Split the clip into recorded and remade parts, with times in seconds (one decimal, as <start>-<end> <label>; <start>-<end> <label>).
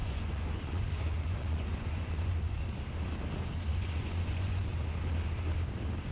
0.0-2.6 remade; 2.6-3.7 recorded; 3.7-4.7 remade; 4.7-6.1 recorded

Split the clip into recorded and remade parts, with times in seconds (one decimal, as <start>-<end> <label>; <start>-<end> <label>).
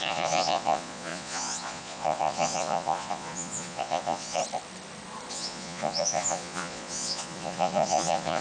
0.0-4.4 remade; 4.4-5.3 recorded; 5.3-8.4 remade